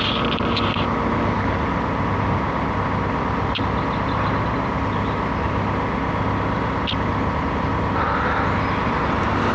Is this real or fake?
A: real